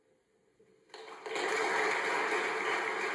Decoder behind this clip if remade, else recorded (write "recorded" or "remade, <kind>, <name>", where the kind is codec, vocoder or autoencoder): recorded